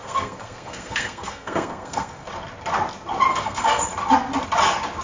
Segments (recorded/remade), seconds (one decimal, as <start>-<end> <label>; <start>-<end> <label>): 0.0-2.3 remade; 2.3-3.3 recorded; 3.3-3.8 remade; 3.8-5.0 recorded